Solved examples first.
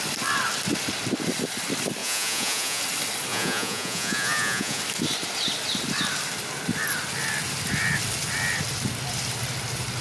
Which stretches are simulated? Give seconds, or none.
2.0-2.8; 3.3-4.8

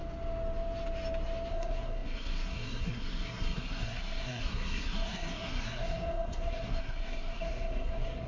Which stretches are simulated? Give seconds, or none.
1.5-8.3

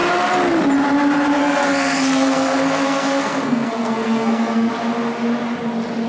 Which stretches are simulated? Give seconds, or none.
1.4-4.7

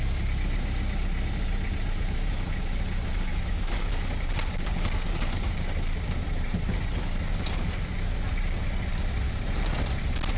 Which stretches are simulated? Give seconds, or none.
3.3-3.9

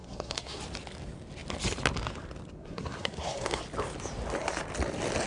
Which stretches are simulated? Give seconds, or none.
0.0-0.6; 2.6-3.6

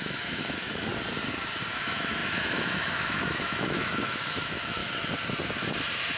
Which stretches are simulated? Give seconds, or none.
0.0-0.9; 1.7-4.8

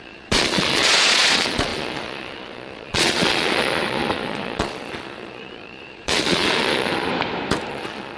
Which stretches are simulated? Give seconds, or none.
0.0-7.1; 7.7-8.2

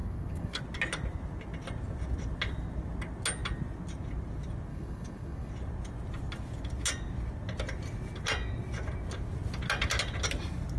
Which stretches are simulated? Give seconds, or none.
0.0-0.6; 4.7-5.5